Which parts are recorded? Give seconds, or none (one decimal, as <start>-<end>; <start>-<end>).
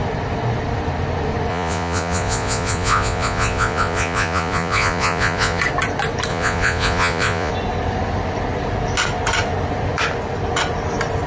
0.0-1.5; 5.6-6.3; 7.5-11.3